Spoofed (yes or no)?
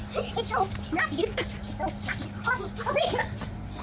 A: no